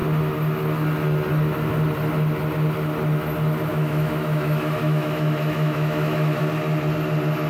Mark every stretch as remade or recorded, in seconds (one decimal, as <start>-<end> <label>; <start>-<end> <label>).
0.0-3.7 recorded; 3.7-6.4 remade; 6.4-7.5 recorded